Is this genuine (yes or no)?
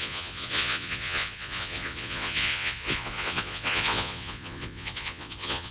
no